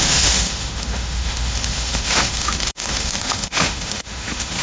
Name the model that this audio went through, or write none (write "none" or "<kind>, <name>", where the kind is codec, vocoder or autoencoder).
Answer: autoencoder, DAC-VAE